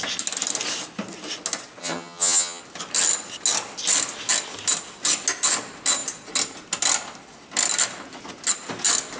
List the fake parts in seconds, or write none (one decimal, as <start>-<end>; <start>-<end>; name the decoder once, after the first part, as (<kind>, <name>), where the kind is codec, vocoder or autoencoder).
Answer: 1.8-2.6 (vocoder, HiFi-GAN)